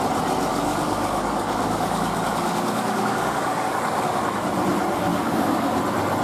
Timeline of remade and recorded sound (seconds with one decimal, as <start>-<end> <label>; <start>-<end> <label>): 0.0-0.5 recorded; 0.5-4.2 remade; 4.2-5.1 recorded; 5.1-5.8 remade; 5.8-6.2 recorded